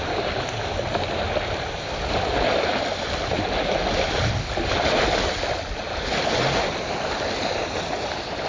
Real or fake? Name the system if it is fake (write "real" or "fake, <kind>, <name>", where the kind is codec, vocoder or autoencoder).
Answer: real